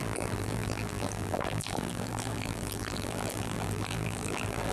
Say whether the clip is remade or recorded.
remade